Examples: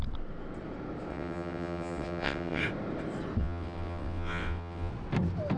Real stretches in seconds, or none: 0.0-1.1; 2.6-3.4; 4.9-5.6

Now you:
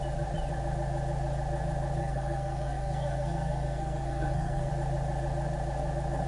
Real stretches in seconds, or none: 0.0-2.0; 4.7-6.3

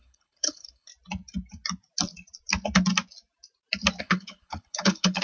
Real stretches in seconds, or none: 0.9-4.0

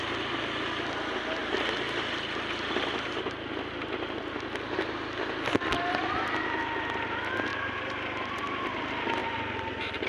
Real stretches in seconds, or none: 0.0-7.5; 8.4-9.2